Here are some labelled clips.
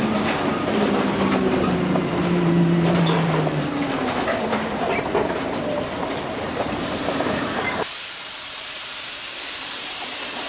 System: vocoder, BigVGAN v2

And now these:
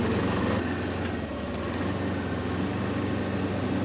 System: none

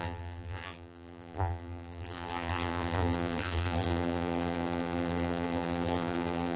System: vocoder, BigVGAN v2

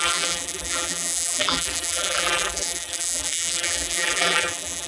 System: vocoder, BigVGAN v2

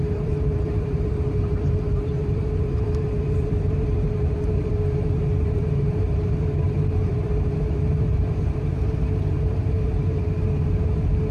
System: vocoder, BigVGAN v2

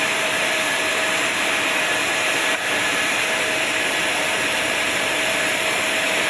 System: vocoder, BigVGAN v2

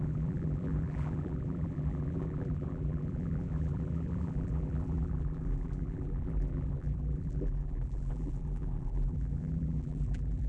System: vocoder, BigVGAN v2